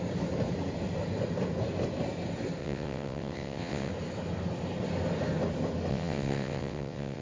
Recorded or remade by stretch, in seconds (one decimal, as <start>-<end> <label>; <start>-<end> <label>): 0.0-2.6 recorded; 2.6-3.9 remade; 3.9-5.9 recorded; 5.9-7.2 remade